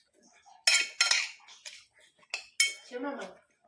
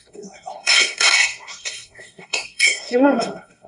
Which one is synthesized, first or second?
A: second